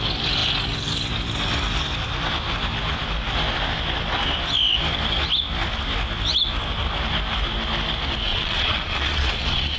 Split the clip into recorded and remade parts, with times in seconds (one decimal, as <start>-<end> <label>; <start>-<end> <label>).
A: 0.0-8.3 recorded; 8.3-9.8 remade

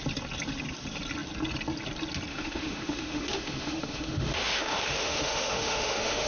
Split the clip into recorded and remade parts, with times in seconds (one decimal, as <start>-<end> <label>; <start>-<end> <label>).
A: 0.0-2.3 recorded; 2.3-6.3 remade

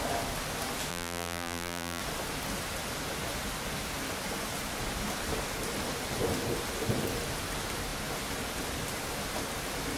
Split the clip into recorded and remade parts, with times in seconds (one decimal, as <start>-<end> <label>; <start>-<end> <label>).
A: 0.0-0.9 recorded; 0.9-2.0 remade; 2.0-10.0 recorded

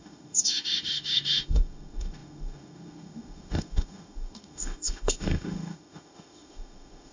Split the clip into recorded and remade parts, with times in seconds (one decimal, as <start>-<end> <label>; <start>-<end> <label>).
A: 0.0-7.1 remade

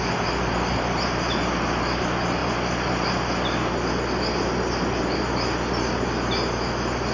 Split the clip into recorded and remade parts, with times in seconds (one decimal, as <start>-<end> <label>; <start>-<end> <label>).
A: 0.0-7.1 recorded

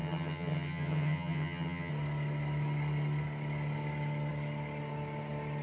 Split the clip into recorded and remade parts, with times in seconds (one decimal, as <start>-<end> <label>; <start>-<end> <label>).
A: 0.0-1.9 remade; 1.9-5.6 recorded

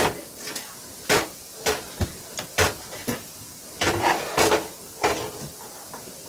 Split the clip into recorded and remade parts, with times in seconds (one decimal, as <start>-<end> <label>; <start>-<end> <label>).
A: 0.0-0.9 recorded; 0.9-4.7 remade; 4.7-6.3 recorded

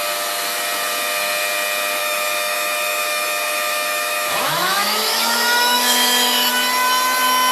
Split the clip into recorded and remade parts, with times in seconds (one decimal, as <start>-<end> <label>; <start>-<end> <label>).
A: 0.0-2.0 recorded; 2.0-6.5 remade; 6.5-7.5 recorded